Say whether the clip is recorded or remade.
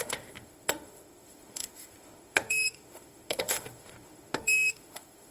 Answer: remade